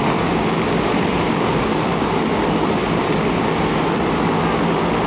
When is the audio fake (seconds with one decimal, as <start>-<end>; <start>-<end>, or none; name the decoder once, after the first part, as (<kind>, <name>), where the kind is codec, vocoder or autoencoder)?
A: none